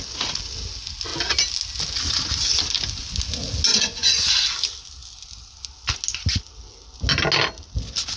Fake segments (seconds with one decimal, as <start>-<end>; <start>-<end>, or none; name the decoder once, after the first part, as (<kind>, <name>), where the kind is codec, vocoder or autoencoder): 3.7-4.3 (vocoder, Vocos)